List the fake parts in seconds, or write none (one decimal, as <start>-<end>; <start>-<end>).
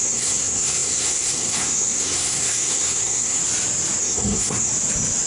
0.0-3.4; 4.0-4.7